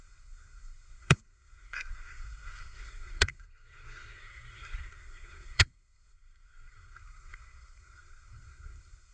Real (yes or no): no